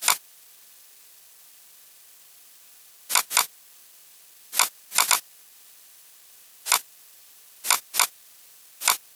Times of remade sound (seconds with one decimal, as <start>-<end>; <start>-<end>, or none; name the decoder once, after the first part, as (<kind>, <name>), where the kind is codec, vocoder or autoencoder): none